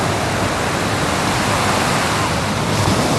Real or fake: real